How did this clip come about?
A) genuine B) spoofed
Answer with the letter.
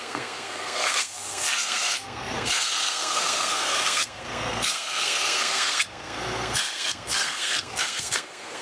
B